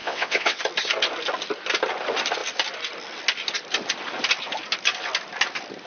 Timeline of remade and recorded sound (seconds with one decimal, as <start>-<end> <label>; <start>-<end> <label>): 0.0-0.6 remade; 0.6-5.9 recorded